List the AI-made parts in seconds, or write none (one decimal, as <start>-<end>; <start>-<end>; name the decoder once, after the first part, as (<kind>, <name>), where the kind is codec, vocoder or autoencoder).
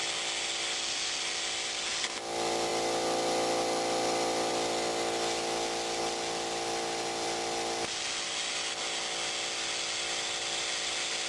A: 0.0-2.7 (vocoder, BigVGAN v2); 4.5-4.9; 6.0-11.3